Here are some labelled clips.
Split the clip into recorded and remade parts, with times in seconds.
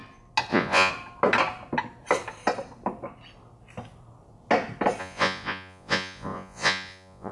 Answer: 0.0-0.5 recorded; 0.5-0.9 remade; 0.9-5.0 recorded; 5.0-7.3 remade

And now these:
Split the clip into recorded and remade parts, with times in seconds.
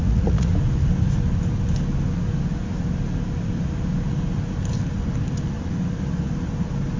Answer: 0.0-0.5 remade; 0.5-7.0 recorded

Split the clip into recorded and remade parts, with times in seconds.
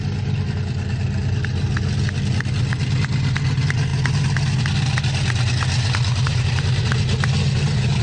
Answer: 0.0-8.0 recorded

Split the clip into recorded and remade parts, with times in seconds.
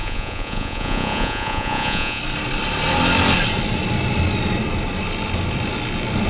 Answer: 0.0-2.2 remade; 2.2-6.3 recorded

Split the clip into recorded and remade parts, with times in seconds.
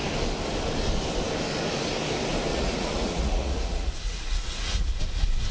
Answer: 0.0-2.5 recorded; 2.5-5.0 remade; 5.0-5.5 recorded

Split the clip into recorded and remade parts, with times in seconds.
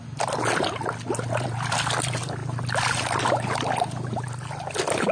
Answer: 0.0-5.1 recorded